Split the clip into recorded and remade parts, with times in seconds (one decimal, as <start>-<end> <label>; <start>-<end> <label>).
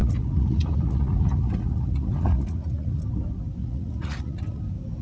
0.0-3.0 remade; 3.0-3.6 recorded; 3.6-4.6 remade; 4.6-5.0 recorded